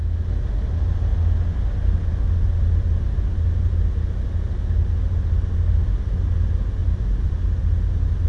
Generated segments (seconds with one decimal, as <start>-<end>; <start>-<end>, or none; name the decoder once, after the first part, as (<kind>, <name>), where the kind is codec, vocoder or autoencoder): 6.8-7.4 (vocoder, BigVGAN v2)